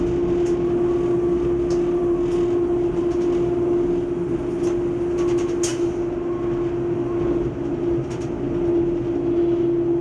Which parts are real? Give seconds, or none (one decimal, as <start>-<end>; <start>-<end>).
0.0-10.0